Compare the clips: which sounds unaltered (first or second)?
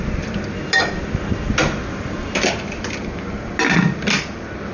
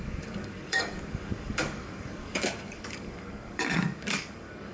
first